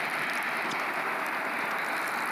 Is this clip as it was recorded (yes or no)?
yes